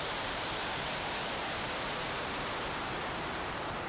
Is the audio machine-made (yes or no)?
yes